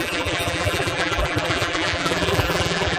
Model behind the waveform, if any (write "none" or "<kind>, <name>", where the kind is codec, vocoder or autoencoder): vocoder, BigVGAN v2